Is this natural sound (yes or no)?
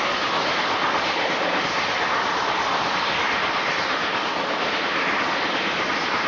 yes